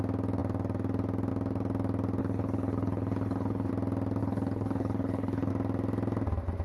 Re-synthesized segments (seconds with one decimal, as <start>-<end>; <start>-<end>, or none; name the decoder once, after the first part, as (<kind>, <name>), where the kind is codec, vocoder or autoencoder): 2.2-3.7 (codec, HILCodec); 4.2-5.5